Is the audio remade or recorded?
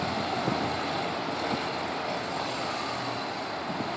recorded